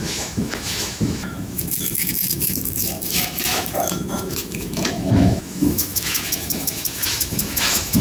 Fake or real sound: fake